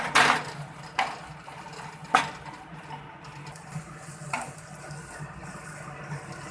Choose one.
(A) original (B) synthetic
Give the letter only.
A